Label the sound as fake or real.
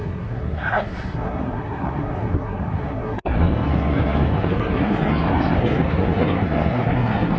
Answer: fake